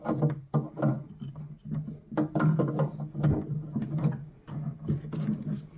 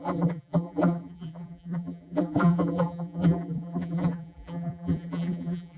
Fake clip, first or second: second